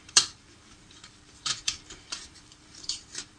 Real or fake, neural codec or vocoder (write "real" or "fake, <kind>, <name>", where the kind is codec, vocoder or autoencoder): fake, vocoder, BigVGAN v2